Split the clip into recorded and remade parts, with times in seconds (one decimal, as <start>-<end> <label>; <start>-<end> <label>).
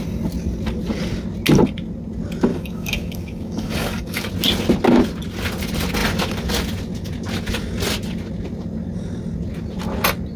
0.0-2.5 recorded; 2.5-4.3 remade; 4.3-10.4 recorded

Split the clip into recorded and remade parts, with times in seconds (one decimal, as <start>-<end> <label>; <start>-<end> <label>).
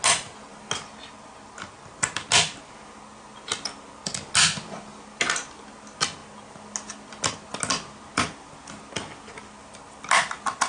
0.0-10.7 recorded